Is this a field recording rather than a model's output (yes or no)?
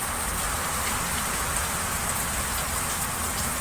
yes